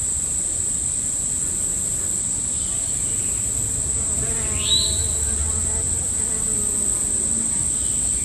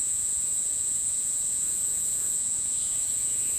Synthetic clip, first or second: second